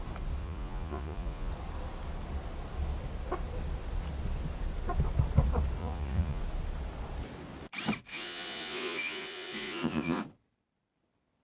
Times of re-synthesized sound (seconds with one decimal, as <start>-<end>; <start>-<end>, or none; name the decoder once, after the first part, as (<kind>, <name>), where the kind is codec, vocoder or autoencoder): 0.4-1.5 (vocoder, Vocos); 5.8-6.4; 8.1-10.2